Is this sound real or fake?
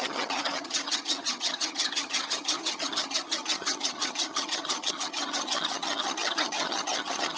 fake